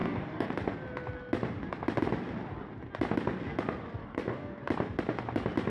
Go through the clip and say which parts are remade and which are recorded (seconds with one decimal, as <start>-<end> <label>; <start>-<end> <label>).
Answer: 0.0-0.5 remade; 0.5-4.0 recorded; 4.0-4.6 remade; 4.6-5.7 recorded